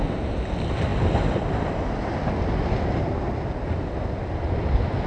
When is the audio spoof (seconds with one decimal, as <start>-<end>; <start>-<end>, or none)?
none